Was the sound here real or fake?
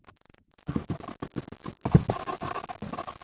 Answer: real